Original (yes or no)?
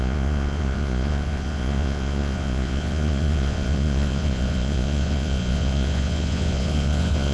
no